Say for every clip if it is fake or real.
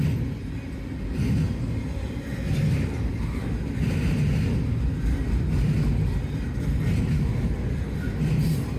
real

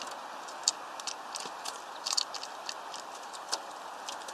real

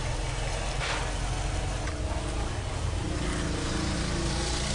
real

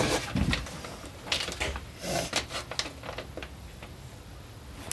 real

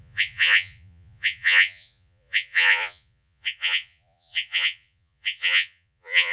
fake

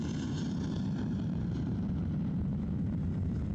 fake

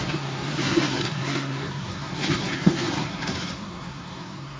fake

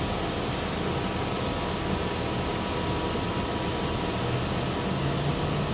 real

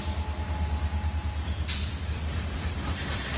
real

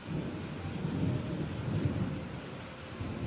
real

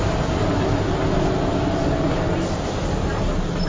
real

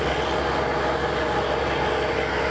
real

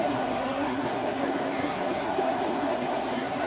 fake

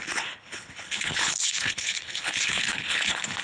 fake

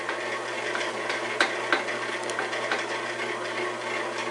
real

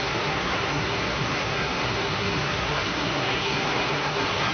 fake